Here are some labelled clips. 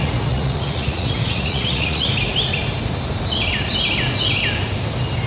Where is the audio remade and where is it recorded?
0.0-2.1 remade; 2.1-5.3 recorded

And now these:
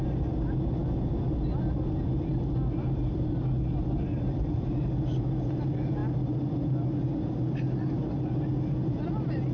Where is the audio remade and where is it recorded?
0.0-9.5 recorded

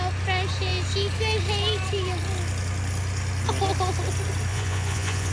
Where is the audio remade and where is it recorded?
0.0-4.5 recorded; 4.5-5.3 remade

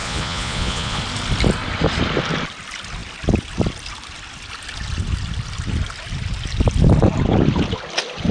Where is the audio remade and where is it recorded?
0.0-1.0 remade; 1.0-8.3 recorded

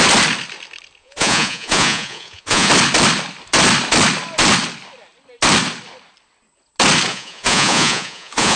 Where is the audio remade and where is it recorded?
0.0-1.0 recorded; 1.0-2.7 remade; 2.7-7.1 recorded; 7.1-8.6 remade

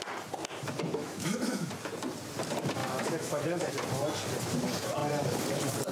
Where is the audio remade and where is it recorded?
0.0-1.0 recorded; 1.0-1.7 remade; 1.7-2.8 recorded; 2.8-3.7 remade; 3.7-5.9 recorded

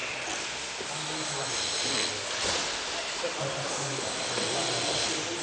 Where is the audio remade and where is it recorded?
0.0-5.4 recorded

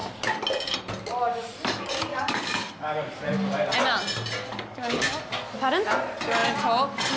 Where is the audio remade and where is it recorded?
0.0-2.1 recorded; 2.1-2.7 remade; 2.7-4.5 recorded; 4.5-5.2 remade; 5.2-7.2 recorded